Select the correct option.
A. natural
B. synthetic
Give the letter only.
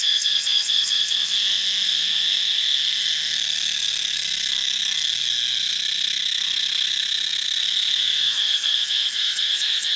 B